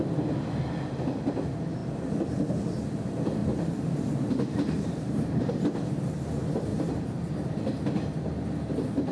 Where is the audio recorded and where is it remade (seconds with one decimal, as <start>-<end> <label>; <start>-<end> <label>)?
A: 0.0-3.4 recorded; 3.4-5.5 remade; 5.5-6.7 recorded; 6.7-7.3 remade; 7.3-9.1 recorded

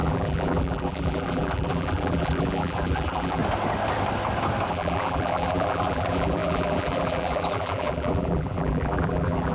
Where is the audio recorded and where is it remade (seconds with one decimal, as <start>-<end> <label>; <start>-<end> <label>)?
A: 0.0-3.4 remade; 3.4-4.7 recorded; 4.7-9.5 remade

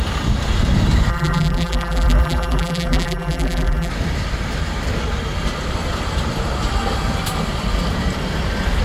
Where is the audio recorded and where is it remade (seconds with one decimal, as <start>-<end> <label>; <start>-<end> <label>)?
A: 0.0-1.1 recorded; 1.1-3.9 remade; 3.9-8.8 recorded

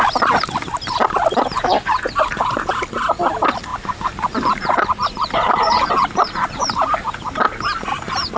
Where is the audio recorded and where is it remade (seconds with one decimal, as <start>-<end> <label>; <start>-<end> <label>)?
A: 0.0-3.7 recorded; 3.7-5.9 remade; 5.9-8.4 recorded

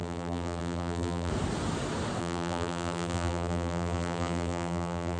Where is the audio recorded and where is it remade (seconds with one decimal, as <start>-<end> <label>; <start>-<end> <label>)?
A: 0.0-1.3 remade; 1.3-2.2 recorded; 2.2-5.2 remade

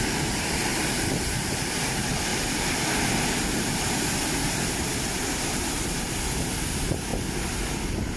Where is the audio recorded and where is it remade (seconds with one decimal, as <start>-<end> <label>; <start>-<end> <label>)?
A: 0.0-8.2 recorded